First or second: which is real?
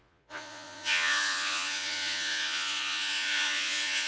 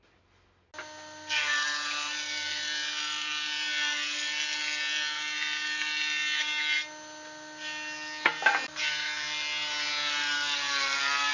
second